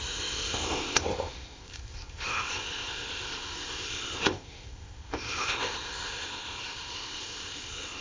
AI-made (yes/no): yes